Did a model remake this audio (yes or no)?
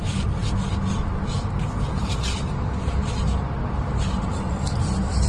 no